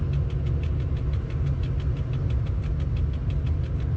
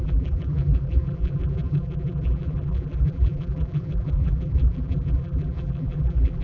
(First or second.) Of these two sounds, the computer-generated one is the second